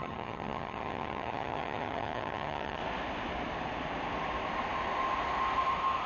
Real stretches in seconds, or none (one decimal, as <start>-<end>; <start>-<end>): 2.8-6.1